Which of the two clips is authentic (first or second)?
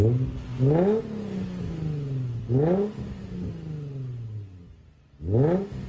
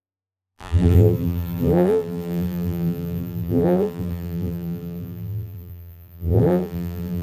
first